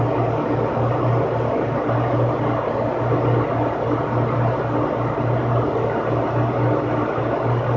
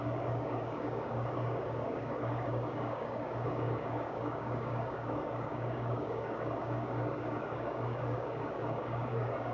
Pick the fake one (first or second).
second